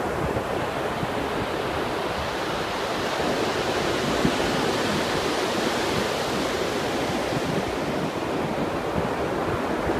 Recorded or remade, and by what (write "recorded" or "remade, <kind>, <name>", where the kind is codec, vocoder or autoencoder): recorded